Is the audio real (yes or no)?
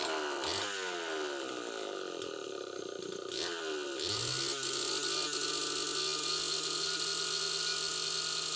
yes